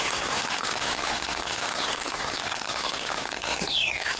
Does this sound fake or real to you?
fake